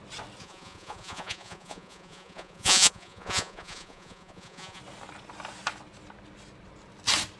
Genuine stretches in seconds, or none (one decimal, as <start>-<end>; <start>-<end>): 0.0-0.4; 4.8-7.4